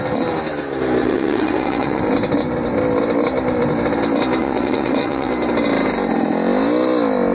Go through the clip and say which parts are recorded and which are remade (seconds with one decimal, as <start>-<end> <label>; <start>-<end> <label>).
0.0-1.0 recorded; 1.0-2.0 remade; 2.0-4.4 recorded; 4.4-5.3 remade; 5.3-7.3 recorded